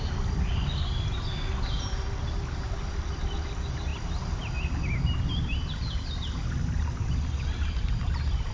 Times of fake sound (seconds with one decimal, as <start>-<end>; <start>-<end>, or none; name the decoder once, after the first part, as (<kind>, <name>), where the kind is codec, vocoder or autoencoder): none